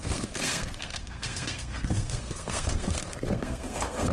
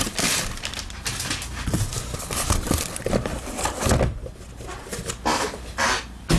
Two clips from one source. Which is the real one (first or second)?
second